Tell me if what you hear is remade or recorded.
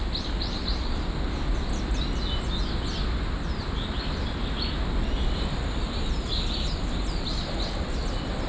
recorded